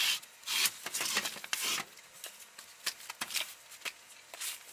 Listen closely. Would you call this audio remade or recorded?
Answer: recorded